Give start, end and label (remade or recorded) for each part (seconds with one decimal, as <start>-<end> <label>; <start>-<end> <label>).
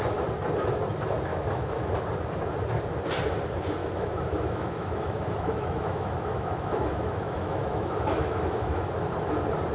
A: 0.0-1.3 recorded; 1.3-1.9 remade; 1.9-3.8 recorded; 3.8-8.9 remade; 8.9-9.7 recorded